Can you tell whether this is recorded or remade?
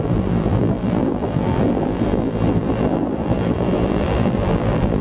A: remade